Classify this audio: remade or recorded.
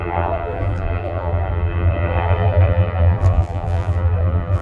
remade